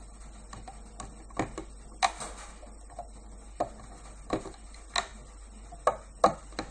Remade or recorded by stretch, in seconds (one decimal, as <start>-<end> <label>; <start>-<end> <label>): 0.0-6.7 recorded